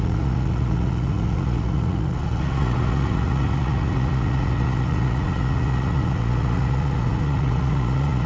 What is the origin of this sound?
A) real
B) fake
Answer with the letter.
B